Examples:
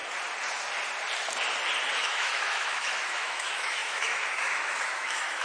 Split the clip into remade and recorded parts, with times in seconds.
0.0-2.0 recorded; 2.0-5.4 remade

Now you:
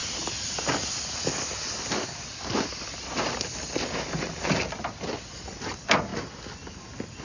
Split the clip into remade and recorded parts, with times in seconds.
0.0-7.2 recorded

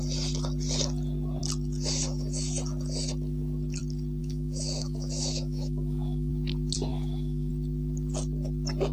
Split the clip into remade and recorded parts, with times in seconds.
0.0-4.2 recorded; 4.2-6.3 remade; 6.3-6.9 recorded; 6.9-7.5 remade; 7.5-8.9 recorded

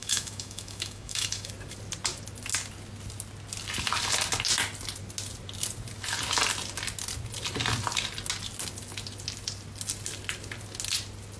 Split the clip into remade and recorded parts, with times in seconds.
0.0-1.5 remade; 1.5-11.4 recorded

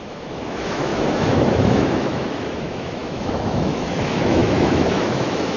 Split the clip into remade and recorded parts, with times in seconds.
0.0-5.6 remade

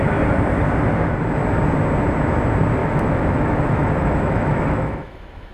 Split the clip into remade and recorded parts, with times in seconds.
0.0-2.8 recorded; 2.8-5.5 remade